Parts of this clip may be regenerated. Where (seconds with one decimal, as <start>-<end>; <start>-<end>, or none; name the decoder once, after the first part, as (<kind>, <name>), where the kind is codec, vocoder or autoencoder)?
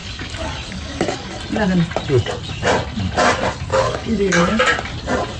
0.0-1.4 (codec, DAC); 3.7-4.4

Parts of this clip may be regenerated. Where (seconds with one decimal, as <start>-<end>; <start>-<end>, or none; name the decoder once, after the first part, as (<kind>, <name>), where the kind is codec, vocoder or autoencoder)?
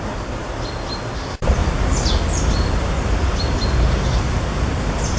none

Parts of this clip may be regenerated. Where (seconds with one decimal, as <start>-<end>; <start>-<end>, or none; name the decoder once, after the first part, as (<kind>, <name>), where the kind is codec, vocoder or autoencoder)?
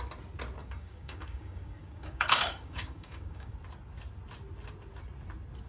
0.6-3.5 (codec, DAC)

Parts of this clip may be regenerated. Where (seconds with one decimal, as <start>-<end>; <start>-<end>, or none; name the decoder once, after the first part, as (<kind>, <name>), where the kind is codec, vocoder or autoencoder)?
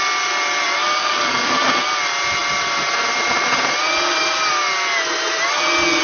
1.0-1.6 (codec, DAC)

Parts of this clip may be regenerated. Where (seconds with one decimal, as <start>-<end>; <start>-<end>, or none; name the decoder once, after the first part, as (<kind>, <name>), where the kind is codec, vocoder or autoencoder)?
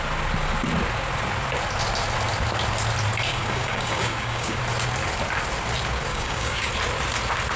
3.3-4.6 (codec, DAC); 6.1-6.7